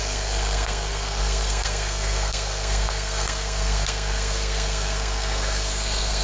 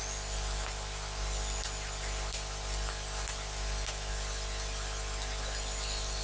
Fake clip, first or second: first